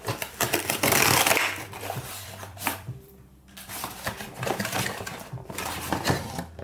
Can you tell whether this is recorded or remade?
remade